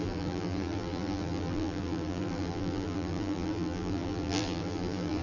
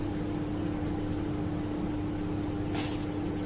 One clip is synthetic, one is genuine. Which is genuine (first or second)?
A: second